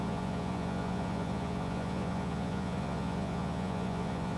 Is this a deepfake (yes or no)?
yes